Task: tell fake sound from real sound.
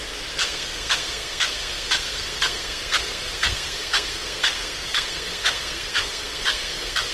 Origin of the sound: fake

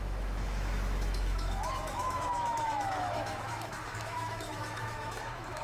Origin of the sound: fake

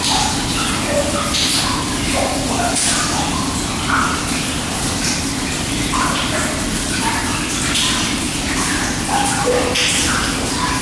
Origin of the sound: real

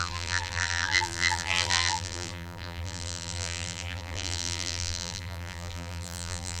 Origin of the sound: fake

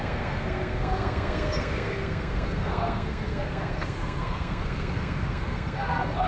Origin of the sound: fake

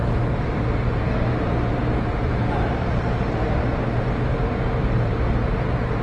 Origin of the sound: fake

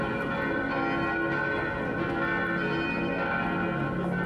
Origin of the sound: real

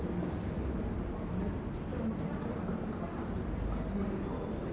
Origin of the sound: real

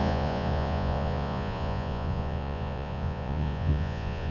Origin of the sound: fake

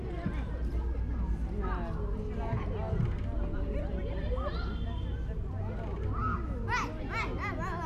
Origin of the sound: real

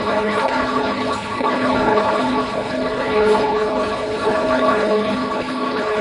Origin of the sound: fake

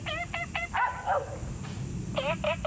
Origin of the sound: real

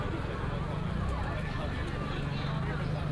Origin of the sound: real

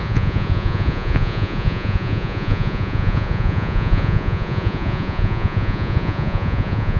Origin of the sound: fake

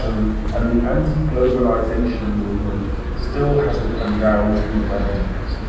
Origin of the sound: real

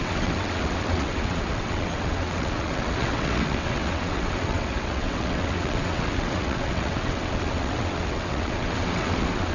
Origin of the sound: fake